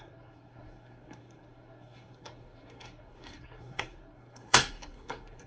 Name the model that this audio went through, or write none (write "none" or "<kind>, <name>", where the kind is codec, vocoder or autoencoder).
codec, SNAC